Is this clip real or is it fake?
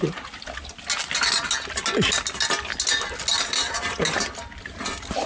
real